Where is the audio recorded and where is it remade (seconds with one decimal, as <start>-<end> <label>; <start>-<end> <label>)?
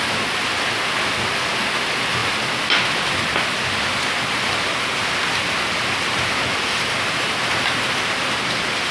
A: 0.0-8.9 recorded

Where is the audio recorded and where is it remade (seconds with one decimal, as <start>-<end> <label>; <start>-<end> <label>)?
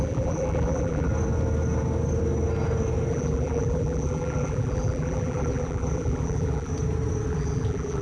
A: 0.0-1.1 remade; 1.1-3.1 recorded; 3.1-6.7 remade; 6.7-7.3 recorded; 7.3-8.0 remade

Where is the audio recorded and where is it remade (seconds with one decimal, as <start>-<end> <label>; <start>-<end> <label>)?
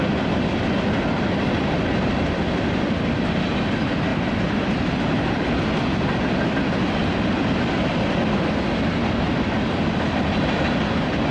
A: 0.0-11.3 recorded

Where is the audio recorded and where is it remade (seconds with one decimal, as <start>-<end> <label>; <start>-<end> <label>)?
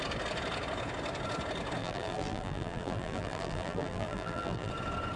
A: 0.0-1.8 recorded; 1.8-4.7 remade; 4.7-5.2 recorded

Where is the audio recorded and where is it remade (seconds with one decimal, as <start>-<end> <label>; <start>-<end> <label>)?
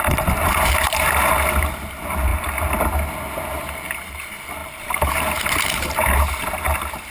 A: 0.0-4.6 recorded; 4.6-6.3 remade; 6.3-7.1 recorded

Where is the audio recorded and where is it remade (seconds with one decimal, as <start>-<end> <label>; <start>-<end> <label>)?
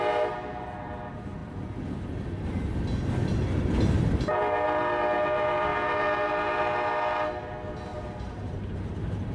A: 0.0-7.9 recorded; 7.9-9.3 remade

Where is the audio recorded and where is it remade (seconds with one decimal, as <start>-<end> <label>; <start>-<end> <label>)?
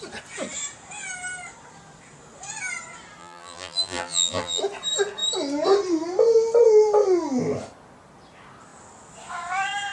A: 0.0-3.2 recorded; 3.2-4.6 remade; 4.6-9.9 recorded